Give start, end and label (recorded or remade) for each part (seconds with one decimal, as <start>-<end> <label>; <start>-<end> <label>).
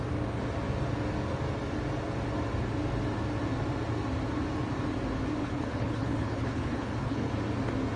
0.0-5.4 recorded; 5.4-7.3 remade; 7.3-8.0 recorded